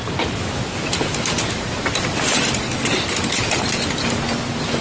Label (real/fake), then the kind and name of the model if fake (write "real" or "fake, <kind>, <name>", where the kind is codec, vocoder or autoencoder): real